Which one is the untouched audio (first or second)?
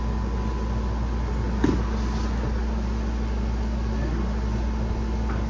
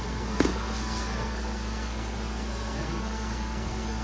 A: first